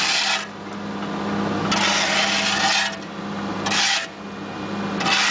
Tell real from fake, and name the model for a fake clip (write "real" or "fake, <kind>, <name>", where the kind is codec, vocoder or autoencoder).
real